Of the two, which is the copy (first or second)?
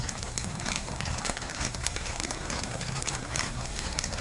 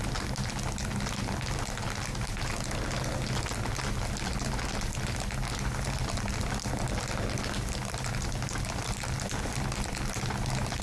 first